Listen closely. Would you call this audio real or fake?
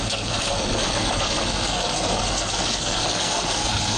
fake